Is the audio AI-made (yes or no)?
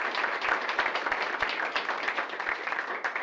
yes